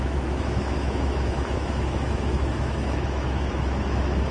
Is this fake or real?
fake